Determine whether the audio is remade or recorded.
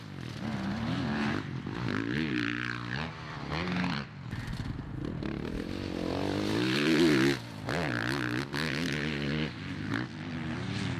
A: recorded